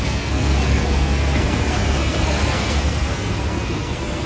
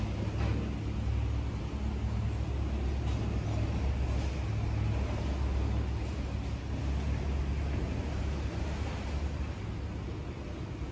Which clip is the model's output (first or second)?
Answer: first